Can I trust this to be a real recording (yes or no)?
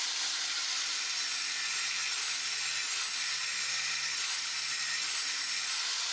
yes